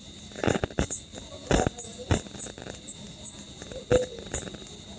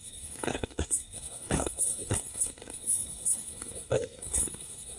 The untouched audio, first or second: first